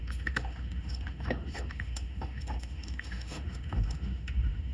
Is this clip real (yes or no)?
no